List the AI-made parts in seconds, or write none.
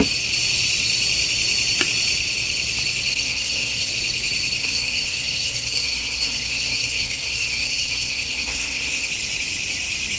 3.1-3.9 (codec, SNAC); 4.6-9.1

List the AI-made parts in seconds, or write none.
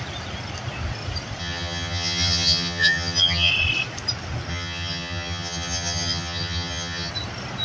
1.4-3.5 (vocoder, HiFi-GAN); 4.5-7.1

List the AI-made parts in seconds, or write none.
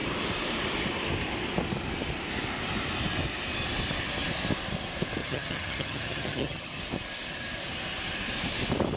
5.2-6.8 (vocoder, HiFi-GAN)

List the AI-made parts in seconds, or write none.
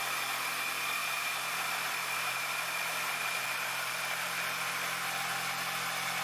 1.0-4.7 (vocoder, BigVGAN v2)